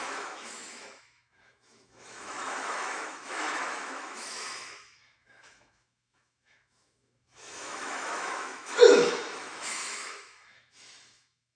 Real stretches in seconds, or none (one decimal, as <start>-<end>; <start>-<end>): none